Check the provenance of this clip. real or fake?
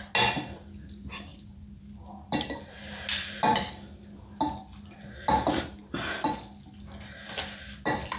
real